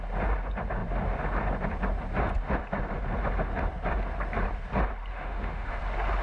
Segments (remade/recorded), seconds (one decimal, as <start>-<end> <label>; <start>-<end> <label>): 0.0-5.1 recorded; 5.1-5.8 remade; 5.8-6.2 recorded